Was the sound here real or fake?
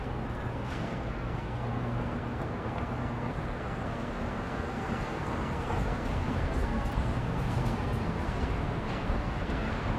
fake